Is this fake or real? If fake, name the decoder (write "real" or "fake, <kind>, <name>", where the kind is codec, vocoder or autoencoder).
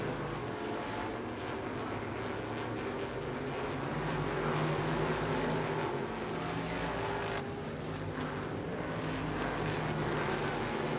real